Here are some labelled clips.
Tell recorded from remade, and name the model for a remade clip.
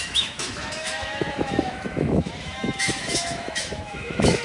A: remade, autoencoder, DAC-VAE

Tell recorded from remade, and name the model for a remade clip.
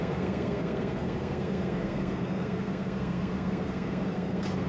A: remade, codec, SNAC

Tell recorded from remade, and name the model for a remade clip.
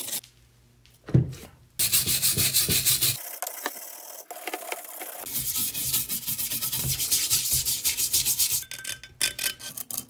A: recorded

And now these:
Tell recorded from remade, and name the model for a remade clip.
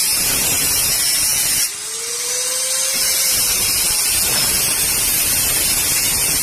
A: recorded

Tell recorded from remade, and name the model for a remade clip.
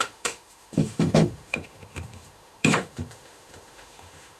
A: remade, autoencoder, DAC-VAE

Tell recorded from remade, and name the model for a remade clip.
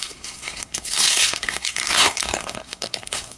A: remade, codec, SNAC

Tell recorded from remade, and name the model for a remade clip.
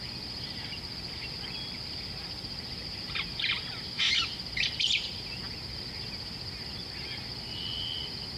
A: recorded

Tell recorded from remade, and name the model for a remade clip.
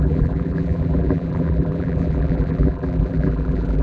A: remade, vocoder, BigVGAN v2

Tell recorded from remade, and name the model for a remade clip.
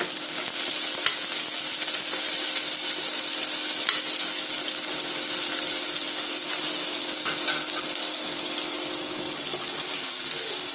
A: recorded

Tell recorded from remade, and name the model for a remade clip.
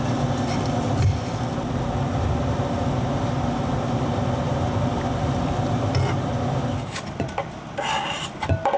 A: recorded